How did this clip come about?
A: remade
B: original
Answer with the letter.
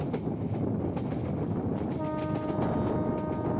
B